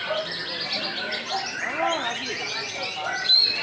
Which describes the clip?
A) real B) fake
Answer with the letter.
A